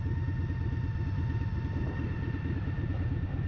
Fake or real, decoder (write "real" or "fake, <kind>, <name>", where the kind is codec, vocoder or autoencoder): real